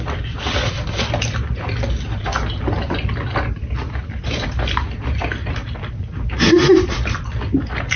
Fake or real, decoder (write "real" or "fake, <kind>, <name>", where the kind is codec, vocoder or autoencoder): real